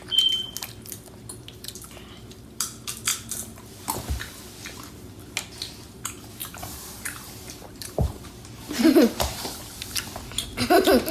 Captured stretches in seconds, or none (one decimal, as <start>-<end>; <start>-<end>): 0.0-6.4; 8.3-11.1